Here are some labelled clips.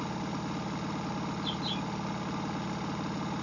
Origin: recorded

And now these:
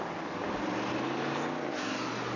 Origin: recorded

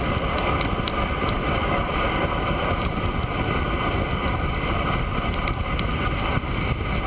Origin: recorded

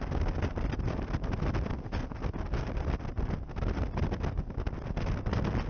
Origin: recorded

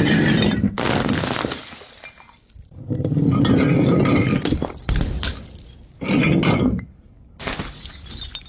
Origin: recorded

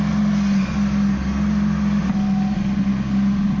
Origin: recorded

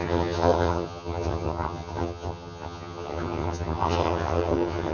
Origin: remade